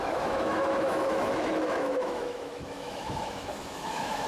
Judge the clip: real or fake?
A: fake